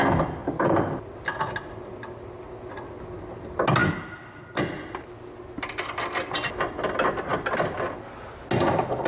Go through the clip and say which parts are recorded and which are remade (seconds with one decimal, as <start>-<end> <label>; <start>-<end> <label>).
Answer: 0.0-9.1 recorded